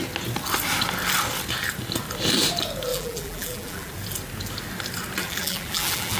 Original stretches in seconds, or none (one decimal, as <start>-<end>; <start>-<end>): 0.0-2.9; 3.9-5.2